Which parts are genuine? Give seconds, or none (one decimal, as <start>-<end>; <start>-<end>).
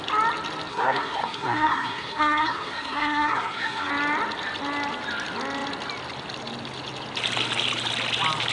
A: 0.0-0.7; 3.9-8.5